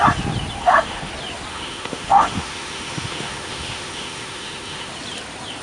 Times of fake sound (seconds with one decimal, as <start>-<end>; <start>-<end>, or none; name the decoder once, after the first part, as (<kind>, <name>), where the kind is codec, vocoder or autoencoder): 0.6-1.1 (autoencoder, DAC-VAE); 1.5-4.9